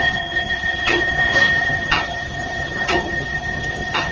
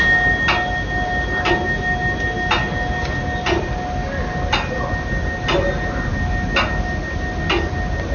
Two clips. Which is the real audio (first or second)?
second